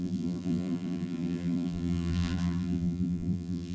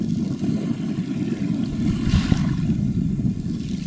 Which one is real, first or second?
second